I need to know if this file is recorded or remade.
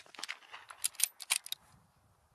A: recorded